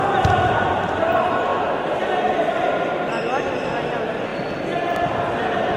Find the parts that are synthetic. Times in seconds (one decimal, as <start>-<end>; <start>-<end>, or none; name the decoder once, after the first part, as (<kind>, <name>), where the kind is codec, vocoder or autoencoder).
none